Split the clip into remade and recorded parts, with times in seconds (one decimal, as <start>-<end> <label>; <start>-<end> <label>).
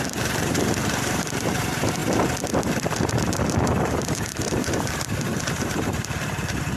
0.0-2.0 remade; 2.0-3.1 recorded; 3.1-6.8 remade